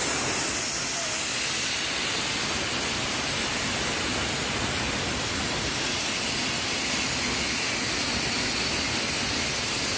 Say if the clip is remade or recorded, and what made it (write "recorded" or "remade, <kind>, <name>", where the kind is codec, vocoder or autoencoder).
recorded